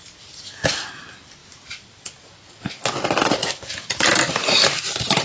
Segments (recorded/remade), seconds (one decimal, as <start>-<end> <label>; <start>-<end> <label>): 0.0-5.2 recorded